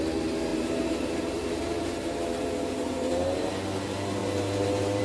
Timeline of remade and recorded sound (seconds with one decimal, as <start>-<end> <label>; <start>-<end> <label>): 0.0-0.5 recorded; 0.5-3.5 remade; 3.5-4.2 recorded; 4.2-5.0 remade